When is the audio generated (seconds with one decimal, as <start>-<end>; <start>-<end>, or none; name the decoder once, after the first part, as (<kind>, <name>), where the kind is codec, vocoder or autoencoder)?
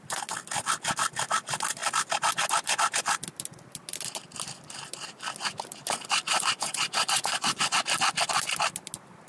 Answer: 6.3-7.8 (vocoder, Vocos)